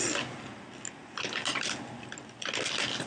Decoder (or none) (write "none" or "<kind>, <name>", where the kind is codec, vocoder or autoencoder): none